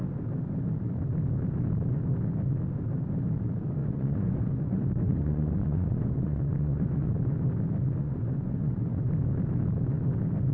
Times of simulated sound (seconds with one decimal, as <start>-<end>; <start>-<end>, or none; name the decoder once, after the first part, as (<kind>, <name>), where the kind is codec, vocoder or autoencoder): 3.8-7.1 (vocoder, Vocos); 8.0-9.1